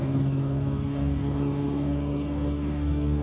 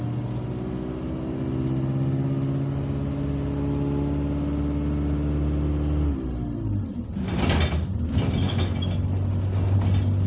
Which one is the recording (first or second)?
second